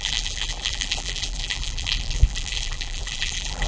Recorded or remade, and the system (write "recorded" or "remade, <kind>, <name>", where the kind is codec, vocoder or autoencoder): remade, vocoder, BigVGAN v2